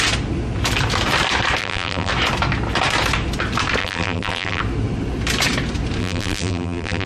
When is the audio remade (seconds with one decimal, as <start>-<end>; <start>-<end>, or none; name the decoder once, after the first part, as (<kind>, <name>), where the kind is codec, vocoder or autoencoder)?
1.6-2.1 (vocoder, BigVGAN v2); 3.8-4.6; 6.0-7.1